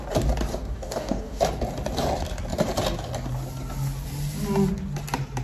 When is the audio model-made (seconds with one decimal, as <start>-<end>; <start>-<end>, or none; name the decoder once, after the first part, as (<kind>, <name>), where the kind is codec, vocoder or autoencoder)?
0.5-1.4 (codec, DAC)